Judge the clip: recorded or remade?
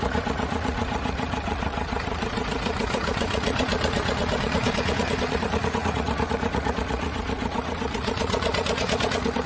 remade